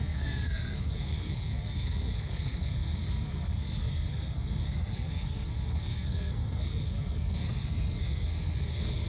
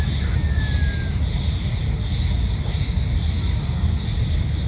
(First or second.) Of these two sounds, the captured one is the second